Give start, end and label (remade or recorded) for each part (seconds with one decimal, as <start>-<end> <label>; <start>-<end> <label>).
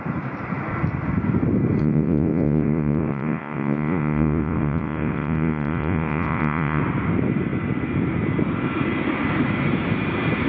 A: 0.0-1.8 recorded; 1.8-6.8 remade; 6.8-10.5 recorded